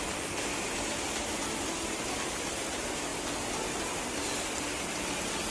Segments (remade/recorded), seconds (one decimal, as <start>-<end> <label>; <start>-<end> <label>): 0.0-5.5 recorded

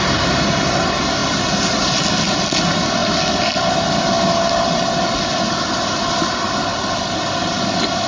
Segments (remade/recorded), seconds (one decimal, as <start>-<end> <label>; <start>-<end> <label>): 0.0-8.1 recorded

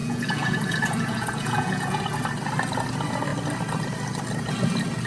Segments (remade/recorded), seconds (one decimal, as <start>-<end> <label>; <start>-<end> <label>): 0.0-2.0 remade; 2.0-5.1 recorded

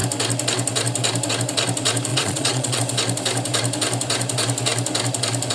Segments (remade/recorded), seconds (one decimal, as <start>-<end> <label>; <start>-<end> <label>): 0.0-2.1 recorded; 2.1-2.8 remade; 2.8-5.5 recorded

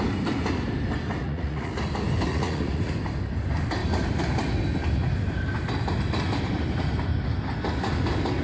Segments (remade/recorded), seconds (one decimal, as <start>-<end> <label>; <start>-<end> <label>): 0.0-1.2 recorded; 1.2-1.8 remade; 1.8-2.3 recorded; 2.3-2.9 remade; 2.9-8.4 recorded